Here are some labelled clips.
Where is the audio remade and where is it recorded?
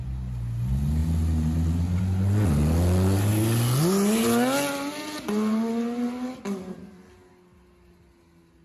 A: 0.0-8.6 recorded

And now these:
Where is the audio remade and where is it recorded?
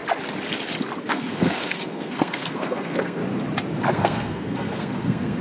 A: 0.0-1.0 recorded; 1.0-3.2 remade; 3.2-3.9 recorded; 3.9-5.4 remade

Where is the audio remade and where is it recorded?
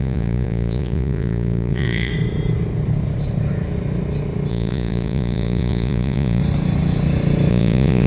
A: 0.0-2.1 remade; 2.1-4.5 recorded; 4.5-6.4 remade; 6.4-7.5 recorded; 7.5-8.1 remade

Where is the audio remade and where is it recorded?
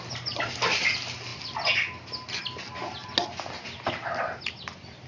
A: 0.0-5.1 recorded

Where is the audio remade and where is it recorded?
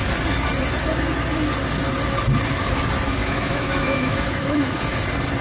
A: 0.0-3.2 recorded; 3.2-4.8 remade; 4.8-5.4 recorded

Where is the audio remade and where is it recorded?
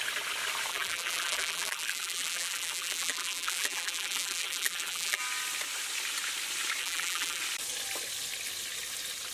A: 0.0-0.7 recorded; 0.7-5.2 remade; 5.2-6.8 recorded; 6.8-7.4 remade; 7.4-9.3 recorded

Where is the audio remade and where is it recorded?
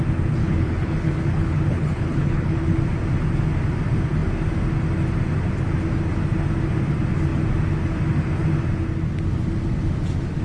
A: 0.0-0.4 recorded; 0.4-2.7 remade; 2.7-10.4 recorded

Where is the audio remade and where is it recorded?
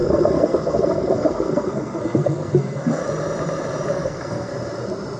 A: 0.0-3.0 remade; 3.0-3.9 recorded; 3.9-4.5 remade; 4.5-5.2 recorded